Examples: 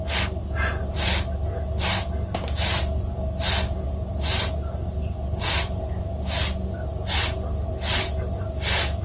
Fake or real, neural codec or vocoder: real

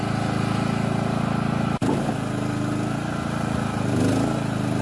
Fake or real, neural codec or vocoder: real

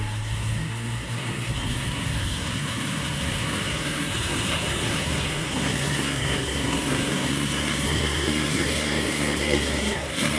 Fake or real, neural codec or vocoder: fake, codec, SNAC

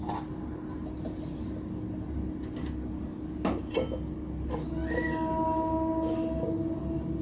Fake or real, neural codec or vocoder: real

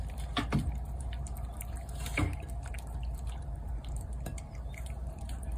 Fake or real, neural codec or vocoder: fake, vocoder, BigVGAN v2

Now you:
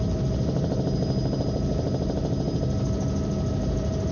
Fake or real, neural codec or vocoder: real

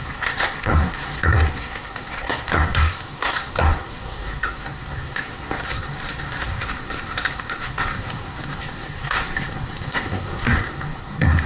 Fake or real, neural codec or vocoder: fake, codec, SNAC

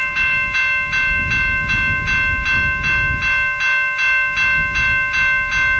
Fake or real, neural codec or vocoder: real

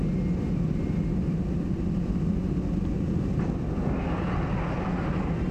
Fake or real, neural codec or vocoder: real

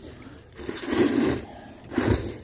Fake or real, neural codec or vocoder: real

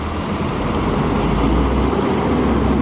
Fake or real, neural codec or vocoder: real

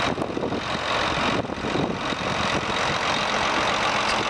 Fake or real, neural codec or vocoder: real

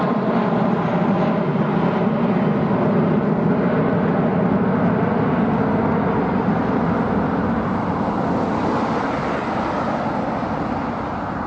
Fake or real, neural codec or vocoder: real